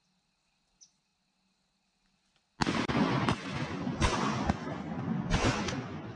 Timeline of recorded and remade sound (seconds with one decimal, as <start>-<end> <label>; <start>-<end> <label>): 0.0-6.2 recorded